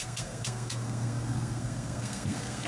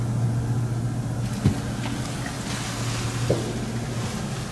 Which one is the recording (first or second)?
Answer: second